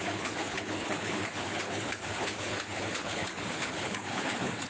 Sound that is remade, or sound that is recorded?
remade